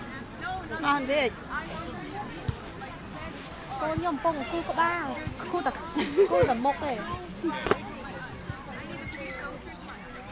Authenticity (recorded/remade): recorded